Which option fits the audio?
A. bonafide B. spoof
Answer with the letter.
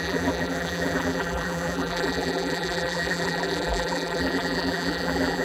B